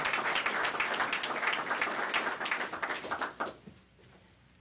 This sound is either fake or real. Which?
real